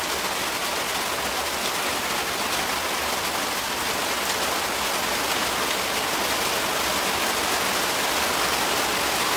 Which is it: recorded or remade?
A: recorded